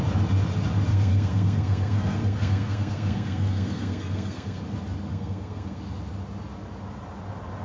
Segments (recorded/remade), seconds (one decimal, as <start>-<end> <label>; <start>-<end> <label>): 0.0-0.9 recorded; 0.9-4.6 remade; 4.6-5.1 recorded; 5.1-5.8 remade; 5.8-7.6 recorded